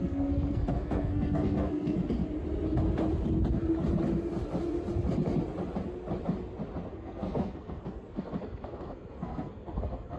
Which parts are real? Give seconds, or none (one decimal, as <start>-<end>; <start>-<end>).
2.0-6.9